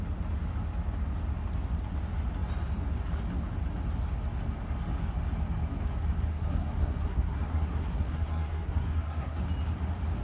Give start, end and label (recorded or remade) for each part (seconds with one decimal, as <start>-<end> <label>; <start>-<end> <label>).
0.0-6.3 recorded; 6.3-9.4 remade; 9.4-10.2 recorded